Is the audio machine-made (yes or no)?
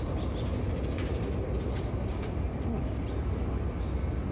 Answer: no